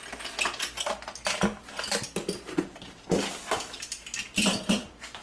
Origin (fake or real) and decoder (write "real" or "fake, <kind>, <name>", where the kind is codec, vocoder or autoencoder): real